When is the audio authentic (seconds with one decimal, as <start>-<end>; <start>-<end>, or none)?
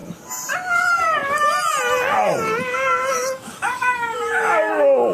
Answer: 0.0-3.1